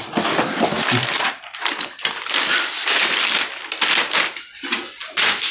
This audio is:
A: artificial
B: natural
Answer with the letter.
B